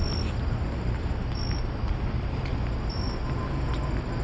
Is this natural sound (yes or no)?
yes